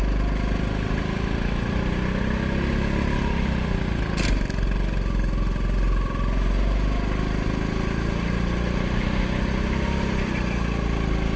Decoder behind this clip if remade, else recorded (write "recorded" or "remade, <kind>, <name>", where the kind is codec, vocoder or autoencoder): recorded